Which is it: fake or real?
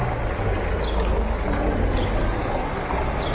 real